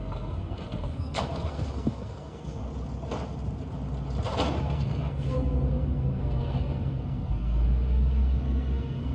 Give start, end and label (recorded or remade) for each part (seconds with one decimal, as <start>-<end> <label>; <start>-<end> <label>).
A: 0.0-2.6 remade; 2.6-4.6 recorded; 4.6-9.1 remade